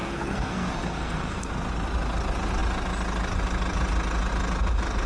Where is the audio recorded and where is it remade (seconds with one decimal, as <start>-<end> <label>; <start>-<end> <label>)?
0.0-1.5 remade; 1.5-5.1 recorded

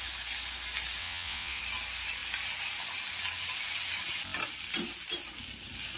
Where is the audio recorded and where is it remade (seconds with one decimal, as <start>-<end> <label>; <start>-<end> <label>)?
0.0-1.0 recorded; 1.0-1.6 remade; 1.6-6.0 recorded

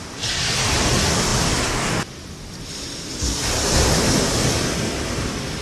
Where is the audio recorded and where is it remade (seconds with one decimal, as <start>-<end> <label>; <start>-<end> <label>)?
0.0-5.6 recorded

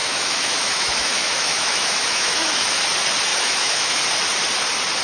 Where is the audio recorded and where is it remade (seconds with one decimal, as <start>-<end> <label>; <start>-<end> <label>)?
0.0-2.8 remade; 2.8-3.3 recorded; 3.3-4.0 remade; 4.0-5.0 recorded

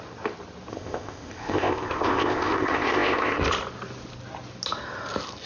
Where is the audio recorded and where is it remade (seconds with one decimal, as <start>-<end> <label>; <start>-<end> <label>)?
0.0-0.7 recorded; 0.7-3.4 remade; 3.4-5.5 recorded